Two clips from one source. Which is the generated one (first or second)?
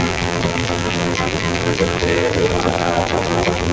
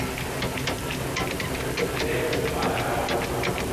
first